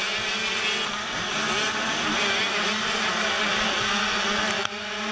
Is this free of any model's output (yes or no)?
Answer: yes